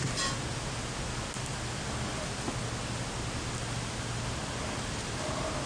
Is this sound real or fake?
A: real